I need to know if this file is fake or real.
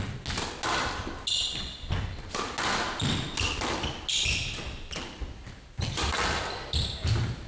real